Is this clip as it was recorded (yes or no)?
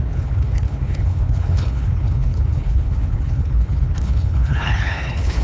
no